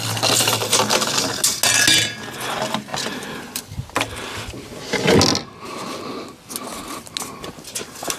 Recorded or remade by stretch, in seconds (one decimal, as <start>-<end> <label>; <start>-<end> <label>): 0.0-2.9 recorded; 2.9-3.6 remade; 3.6-8.2 recorded